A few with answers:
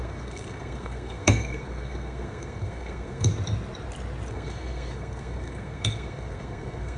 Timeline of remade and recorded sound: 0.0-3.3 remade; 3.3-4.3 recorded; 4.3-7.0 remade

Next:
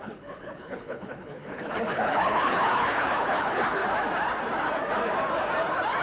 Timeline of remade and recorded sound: 0.0-3.8 remade; 3.8-6.0 recorded

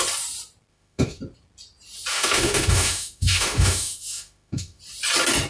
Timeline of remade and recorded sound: 0.0-0.7 recorded; 0.7-1.2 remade; 1.2-2.1 recorded; 2.1-4.8 remade; 4.8-5.5 recorded

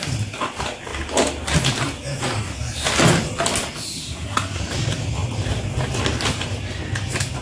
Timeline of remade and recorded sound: 0.0-4.0 recorded; 4.0-4.6 remade; 4.6-7.4 recorded